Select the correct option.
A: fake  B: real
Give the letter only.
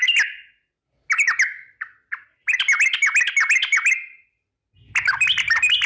B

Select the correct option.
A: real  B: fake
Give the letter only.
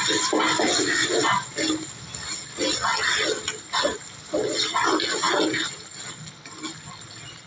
A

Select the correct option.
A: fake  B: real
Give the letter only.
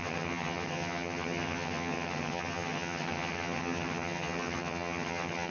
A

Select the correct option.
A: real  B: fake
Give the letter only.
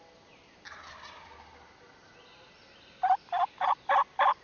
A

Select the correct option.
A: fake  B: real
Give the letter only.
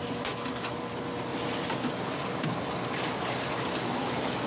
B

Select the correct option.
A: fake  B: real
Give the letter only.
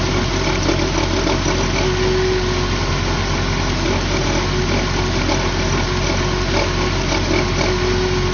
B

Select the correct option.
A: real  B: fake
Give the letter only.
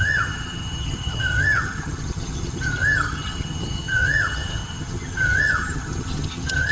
B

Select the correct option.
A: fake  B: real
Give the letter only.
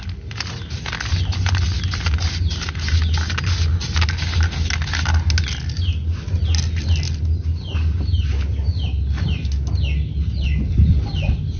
B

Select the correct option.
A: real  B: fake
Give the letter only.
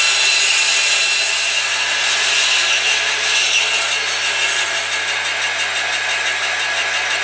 A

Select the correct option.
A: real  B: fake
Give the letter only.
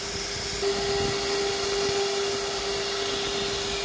A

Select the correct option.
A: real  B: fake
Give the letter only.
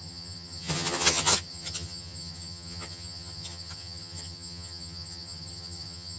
B